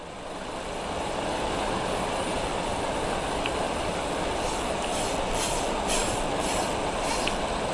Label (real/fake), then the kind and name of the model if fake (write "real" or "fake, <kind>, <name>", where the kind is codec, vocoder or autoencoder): real